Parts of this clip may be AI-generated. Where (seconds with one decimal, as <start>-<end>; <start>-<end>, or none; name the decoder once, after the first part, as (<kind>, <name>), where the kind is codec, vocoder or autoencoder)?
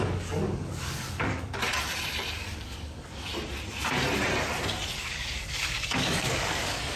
0.0-1.7 (codec, DAC); 2.4-3.3; 5.0-7.0